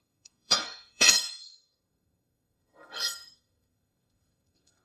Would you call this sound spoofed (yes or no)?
yes